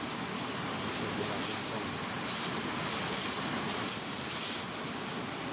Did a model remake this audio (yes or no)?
no